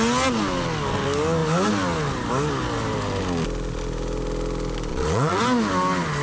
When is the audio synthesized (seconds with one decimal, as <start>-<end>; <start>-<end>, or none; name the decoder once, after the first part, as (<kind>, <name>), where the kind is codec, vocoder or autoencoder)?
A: 4.9-5.4 (vocoder, Vocos)